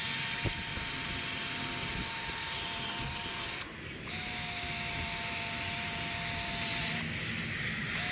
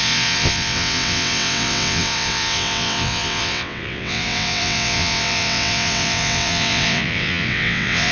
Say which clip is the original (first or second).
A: first